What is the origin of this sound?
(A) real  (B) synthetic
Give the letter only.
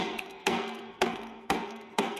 B